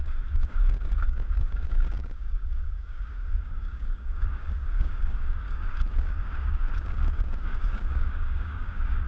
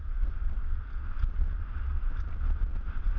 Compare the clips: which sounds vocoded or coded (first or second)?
first